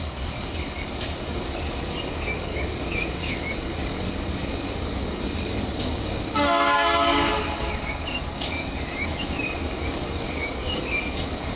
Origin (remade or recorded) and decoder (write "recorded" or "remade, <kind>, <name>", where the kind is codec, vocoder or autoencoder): remade, codec, DAC